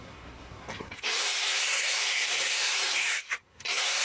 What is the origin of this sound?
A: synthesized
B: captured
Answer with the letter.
A